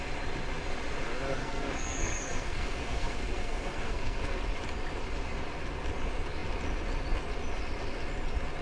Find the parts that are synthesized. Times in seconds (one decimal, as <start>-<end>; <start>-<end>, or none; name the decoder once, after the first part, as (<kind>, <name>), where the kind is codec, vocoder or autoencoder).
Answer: 1.4-4.4 (codec, SNAC)